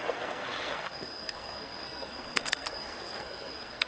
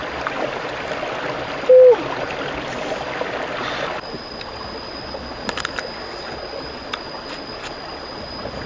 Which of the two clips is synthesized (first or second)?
first